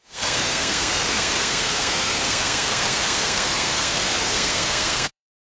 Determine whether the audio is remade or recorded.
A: remade